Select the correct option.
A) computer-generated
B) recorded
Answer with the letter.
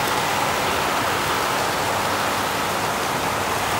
B